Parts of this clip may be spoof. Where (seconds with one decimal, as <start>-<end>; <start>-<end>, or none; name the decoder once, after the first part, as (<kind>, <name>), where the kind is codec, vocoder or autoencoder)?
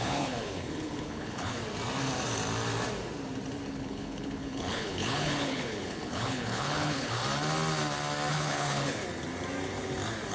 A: 0.0-1.6 (codec, HILCodec); 3.7-7.2; 8.3-9.0